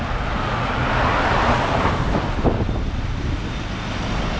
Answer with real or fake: real